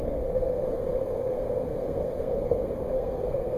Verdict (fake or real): fake